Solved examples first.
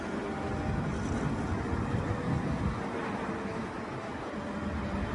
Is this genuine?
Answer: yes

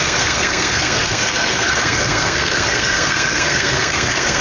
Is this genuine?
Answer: no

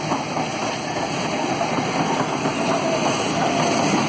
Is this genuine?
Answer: yes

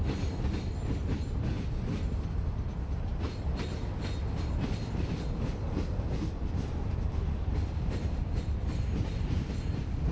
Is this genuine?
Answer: yes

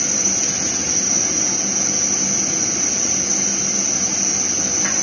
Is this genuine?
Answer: yes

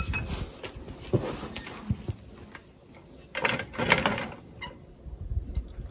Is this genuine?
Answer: yes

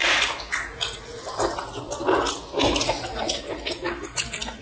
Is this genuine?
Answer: no